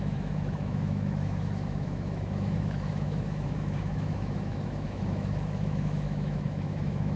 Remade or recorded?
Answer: remade